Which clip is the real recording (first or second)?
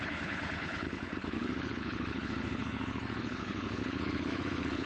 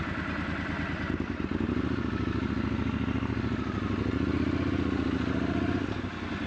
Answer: second